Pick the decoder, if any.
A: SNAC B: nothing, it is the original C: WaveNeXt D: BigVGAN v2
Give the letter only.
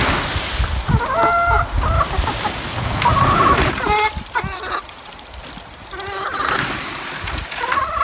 B